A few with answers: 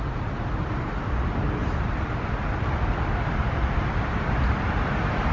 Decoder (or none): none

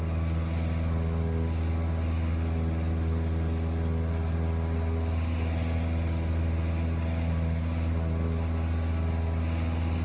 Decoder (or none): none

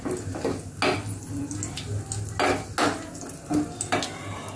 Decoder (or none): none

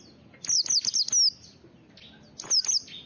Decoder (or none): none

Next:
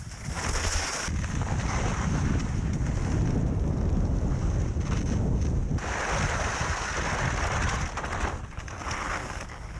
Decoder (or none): none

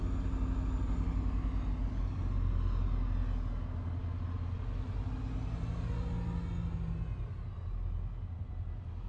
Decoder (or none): none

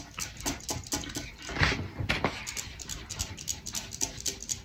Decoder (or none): none